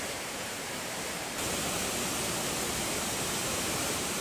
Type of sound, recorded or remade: remade